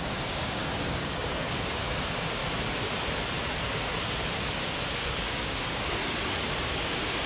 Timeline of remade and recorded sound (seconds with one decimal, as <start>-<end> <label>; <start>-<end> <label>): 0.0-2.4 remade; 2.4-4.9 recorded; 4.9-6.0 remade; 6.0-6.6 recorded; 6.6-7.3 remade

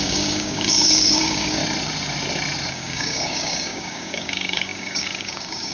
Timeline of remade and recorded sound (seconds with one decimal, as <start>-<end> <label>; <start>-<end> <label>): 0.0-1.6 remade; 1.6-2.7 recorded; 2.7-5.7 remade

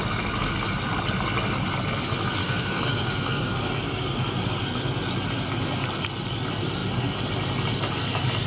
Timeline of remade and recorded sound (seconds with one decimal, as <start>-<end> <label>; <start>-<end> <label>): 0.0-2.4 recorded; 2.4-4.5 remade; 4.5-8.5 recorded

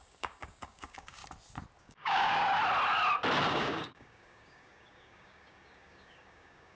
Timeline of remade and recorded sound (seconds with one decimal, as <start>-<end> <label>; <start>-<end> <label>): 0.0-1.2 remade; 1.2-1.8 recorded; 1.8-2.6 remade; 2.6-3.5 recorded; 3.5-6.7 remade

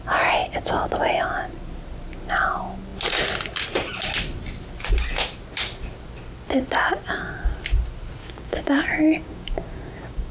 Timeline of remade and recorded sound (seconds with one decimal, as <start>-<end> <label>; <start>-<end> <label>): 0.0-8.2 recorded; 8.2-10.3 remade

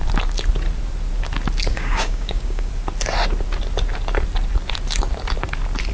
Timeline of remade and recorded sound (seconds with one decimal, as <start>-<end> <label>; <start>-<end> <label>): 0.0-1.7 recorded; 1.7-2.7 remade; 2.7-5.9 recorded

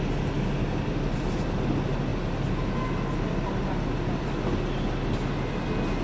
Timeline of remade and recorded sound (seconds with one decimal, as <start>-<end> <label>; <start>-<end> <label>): 0.0-6.0 recorded

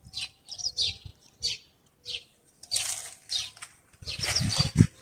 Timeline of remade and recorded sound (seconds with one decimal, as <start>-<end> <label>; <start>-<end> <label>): 0.0-5.0 recorded